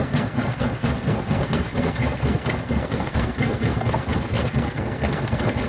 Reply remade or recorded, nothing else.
remade